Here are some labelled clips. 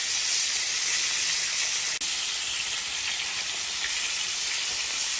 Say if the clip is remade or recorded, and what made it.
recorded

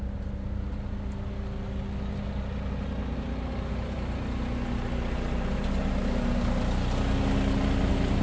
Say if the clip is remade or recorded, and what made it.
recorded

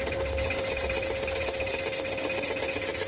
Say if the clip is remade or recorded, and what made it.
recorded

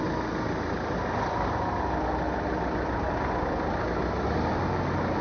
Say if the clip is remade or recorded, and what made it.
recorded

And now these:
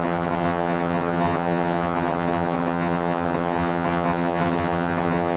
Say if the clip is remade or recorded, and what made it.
remade, vocoder, HiFi-GAN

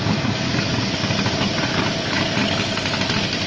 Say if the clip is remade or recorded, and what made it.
recorded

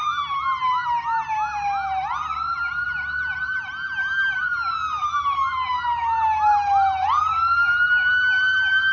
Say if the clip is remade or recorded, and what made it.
recorded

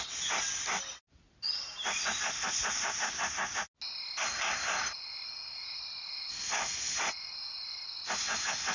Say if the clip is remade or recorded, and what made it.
recorded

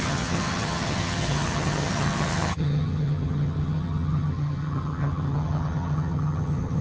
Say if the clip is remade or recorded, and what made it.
remade, vocoder, HiFi-GAN